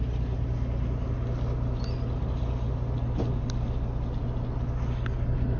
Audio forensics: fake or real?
real